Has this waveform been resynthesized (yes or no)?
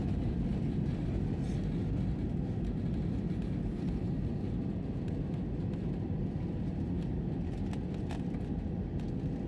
no